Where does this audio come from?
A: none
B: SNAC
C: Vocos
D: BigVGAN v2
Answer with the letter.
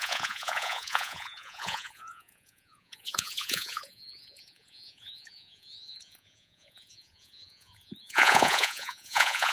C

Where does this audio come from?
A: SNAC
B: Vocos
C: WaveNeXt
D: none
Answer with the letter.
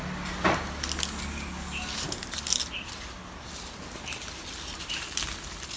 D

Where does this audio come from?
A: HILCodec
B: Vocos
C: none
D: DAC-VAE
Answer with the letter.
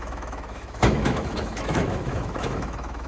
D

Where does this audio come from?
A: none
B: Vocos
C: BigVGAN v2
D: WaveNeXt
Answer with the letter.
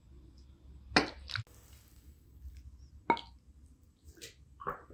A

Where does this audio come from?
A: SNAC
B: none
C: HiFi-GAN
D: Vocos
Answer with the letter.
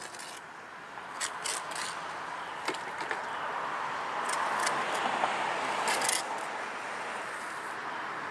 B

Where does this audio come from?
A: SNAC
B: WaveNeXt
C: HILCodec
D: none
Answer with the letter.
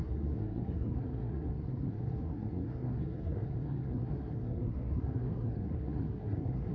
A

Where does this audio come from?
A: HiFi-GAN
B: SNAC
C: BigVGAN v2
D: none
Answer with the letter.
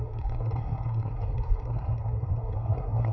B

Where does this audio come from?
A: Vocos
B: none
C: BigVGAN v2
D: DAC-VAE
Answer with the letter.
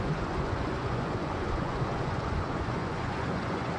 A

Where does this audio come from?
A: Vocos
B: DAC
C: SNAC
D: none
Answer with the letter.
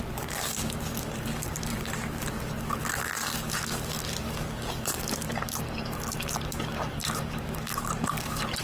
B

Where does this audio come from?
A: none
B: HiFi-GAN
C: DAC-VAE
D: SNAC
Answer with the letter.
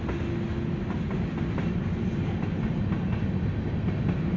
A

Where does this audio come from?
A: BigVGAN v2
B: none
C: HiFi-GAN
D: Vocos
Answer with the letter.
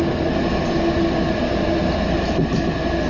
B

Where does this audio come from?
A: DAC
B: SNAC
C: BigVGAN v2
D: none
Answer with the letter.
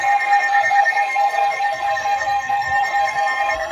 B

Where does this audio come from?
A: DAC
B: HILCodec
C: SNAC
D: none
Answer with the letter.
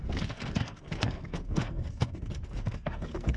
C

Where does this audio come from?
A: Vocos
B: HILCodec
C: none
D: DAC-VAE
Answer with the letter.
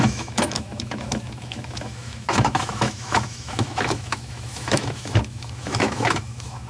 D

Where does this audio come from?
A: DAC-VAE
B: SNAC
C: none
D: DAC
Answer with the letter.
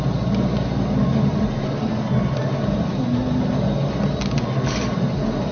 C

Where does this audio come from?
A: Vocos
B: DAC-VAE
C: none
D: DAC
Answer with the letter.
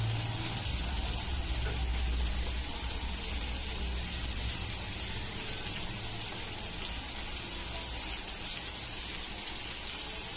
C